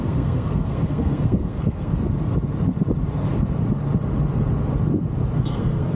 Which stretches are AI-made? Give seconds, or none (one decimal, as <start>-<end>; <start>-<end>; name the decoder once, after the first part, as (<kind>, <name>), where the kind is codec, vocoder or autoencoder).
0.0-1.9 (codec, SNAC); 5.4-5.9